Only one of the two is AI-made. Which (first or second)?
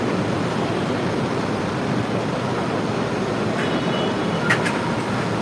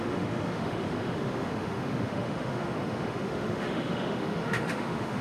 second